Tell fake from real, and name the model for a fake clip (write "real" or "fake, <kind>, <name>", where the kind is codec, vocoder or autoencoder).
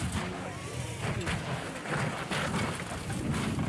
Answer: real